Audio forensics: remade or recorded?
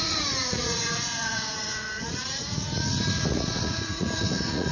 remade